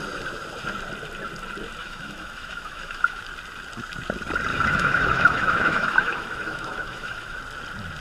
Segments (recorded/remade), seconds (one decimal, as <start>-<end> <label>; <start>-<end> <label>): 0.0-1.8 recorded; 1.8-3.2 remade; 3.2-4.5 recorded; 4.5-7.4 remade; 7.4-8.0 recorded